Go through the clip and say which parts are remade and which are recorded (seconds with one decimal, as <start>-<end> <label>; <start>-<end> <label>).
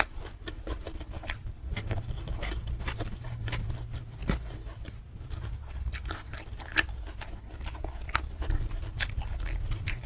0.0-4.2 remade; 4.2-8.3 recorded; 8.3-10.1 remade